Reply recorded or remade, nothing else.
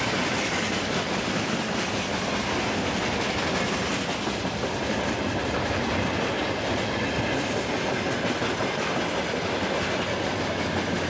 recorded